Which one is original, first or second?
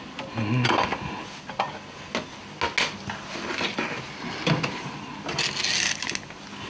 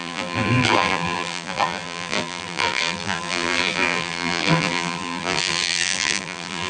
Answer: first